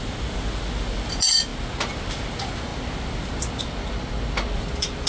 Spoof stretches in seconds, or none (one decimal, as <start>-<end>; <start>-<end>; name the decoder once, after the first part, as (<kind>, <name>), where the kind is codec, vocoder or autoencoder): none